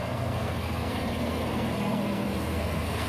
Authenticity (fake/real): fake